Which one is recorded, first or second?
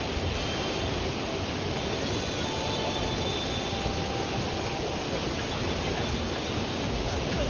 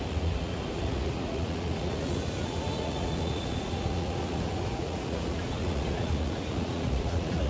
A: first